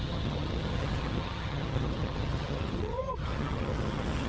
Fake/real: fake